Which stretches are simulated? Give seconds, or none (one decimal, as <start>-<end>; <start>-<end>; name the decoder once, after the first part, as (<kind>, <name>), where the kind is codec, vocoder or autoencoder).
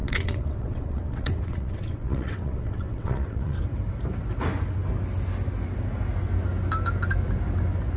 0.0-3.6 (vocoder, WaveNeXt)